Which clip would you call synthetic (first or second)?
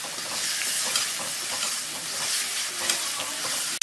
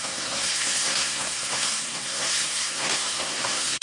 second